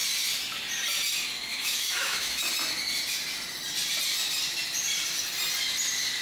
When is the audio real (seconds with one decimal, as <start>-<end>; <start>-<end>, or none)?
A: 0.0-1.5; 2.5-6.2

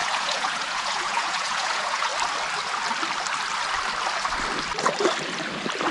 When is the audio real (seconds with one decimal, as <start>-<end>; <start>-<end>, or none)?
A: 2.1-5.9

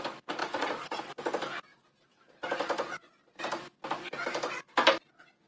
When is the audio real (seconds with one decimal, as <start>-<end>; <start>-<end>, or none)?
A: 0.0-0.4; 1.0-5.5

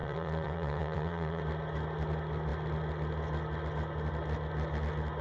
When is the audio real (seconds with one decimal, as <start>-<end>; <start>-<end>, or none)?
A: 1.4-5.2

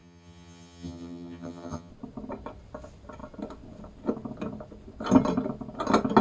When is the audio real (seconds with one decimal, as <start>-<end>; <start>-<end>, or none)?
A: 1.9-6.2